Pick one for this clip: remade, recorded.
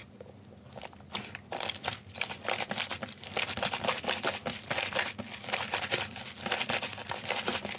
recorded